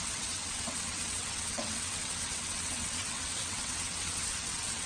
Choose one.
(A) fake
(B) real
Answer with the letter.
A